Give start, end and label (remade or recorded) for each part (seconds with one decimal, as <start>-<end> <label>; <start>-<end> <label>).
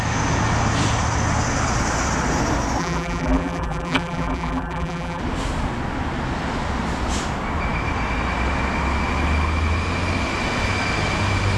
0.0-2.8 recorded; 2.8-5.2 remade; 5.2-11.6 recorded